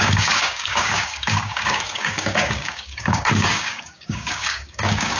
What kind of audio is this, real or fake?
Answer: fake